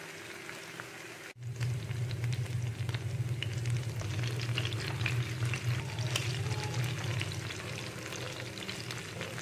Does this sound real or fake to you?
real